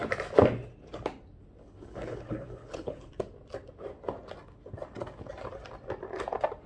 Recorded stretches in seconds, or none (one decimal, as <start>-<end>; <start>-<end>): 0.0-1.6; 3.1-6.7